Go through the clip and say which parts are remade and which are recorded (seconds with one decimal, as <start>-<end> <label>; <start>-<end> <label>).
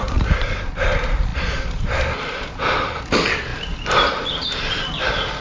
0.0-5.4 recorded